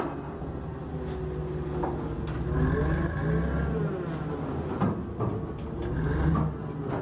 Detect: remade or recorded recorded